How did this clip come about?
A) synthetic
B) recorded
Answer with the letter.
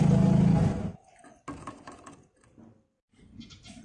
B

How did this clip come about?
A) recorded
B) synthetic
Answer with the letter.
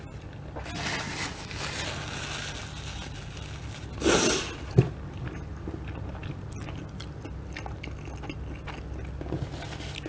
A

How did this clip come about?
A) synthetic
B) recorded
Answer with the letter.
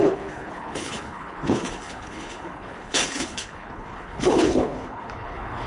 A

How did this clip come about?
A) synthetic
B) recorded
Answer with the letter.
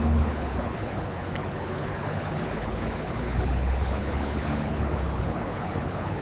A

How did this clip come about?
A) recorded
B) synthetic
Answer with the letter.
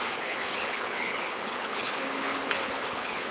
B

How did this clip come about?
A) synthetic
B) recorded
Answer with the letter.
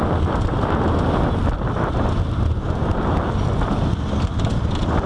B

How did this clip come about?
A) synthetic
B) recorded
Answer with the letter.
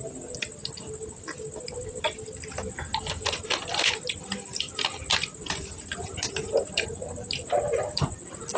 B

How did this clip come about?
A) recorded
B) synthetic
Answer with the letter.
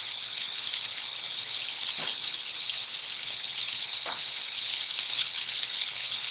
B